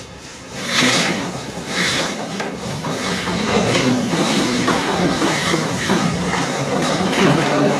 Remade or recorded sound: remade